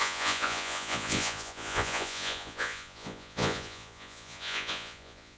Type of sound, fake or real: fake